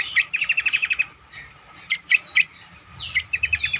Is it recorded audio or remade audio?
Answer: recorded